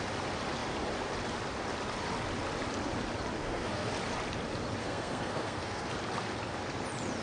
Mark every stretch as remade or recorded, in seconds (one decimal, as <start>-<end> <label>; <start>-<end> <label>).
0.0-3.4 recorded; 3.4-3.9 remade; 3.9-4.8 recorded; 4.8-5.9 remade; 5.9-7.2 recorded